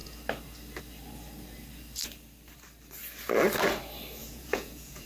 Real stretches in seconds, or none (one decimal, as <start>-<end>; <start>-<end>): 0.0-4.2